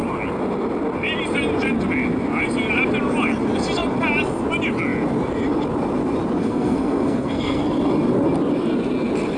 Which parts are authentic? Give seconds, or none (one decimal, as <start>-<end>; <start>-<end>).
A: 0.0-6.4; 7.6-9.4